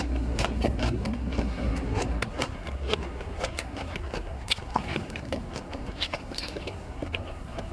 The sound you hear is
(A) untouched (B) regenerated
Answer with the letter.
B